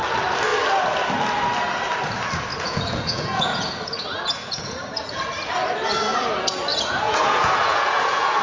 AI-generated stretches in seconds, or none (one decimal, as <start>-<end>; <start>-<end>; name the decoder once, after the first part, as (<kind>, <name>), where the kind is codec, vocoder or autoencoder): 2.5-5.2 (vocoder, Vocos); 6.7-8.4